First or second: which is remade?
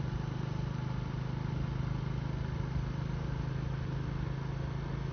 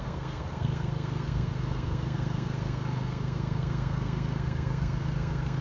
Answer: second